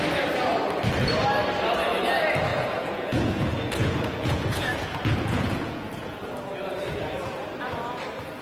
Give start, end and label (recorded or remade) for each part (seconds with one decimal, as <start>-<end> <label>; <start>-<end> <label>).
0.0-2.5 recorded; 2.5-6.3 remade; 6.3-8.4 recorded